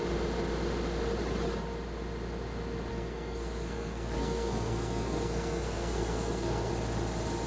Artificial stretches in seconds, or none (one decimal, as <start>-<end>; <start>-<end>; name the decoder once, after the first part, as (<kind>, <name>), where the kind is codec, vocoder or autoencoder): 2.9-6.7 (codec, SNAC)